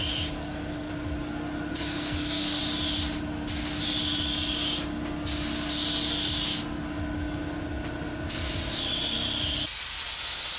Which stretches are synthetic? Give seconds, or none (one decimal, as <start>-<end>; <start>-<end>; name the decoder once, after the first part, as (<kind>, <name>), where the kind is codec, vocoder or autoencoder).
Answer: 0.4-0.9 (codec, SNAC); 1.7-2.6